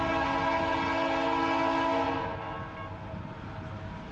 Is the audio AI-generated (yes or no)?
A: no